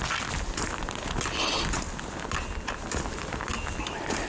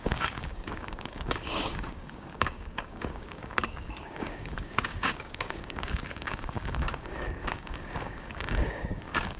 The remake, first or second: second